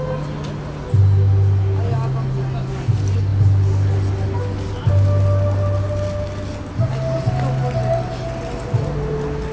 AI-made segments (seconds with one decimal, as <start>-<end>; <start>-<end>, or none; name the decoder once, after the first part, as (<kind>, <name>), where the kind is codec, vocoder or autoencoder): none